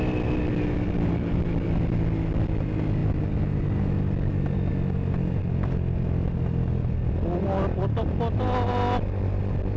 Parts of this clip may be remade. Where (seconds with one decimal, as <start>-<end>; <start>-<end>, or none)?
none

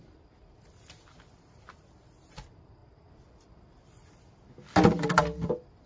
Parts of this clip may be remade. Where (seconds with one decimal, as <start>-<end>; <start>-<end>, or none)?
none

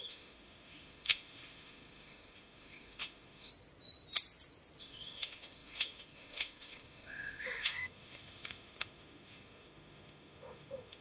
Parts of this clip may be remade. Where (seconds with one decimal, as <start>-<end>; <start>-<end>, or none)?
0.0-3.5; 4.8-11.0

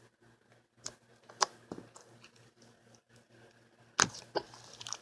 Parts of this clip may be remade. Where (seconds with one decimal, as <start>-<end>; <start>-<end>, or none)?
none

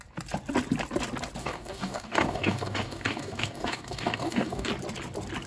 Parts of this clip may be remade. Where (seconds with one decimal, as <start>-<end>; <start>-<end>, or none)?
1.4-4.7

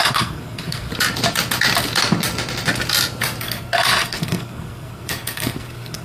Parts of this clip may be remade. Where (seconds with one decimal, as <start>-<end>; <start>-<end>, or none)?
0.0-0.9; 3.4-6.0

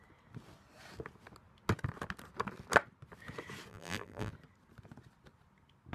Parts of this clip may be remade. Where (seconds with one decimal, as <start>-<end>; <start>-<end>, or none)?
3.7-4.3